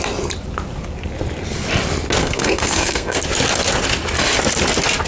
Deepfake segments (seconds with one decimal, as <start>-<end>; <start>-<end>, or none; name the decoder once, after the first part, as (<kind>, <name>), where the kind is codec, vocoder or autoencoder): 2.2-3.2 (codec, SNAC)